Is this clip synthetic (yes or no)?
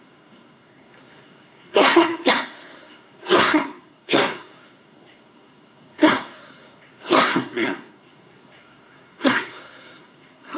yes